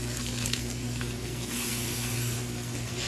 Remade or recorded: remade